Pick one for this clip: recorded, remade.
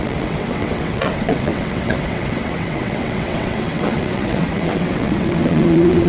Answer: remade